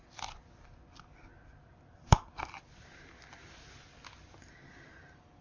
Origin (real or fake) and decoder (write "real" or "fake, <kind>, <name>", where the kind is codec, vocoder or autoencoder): real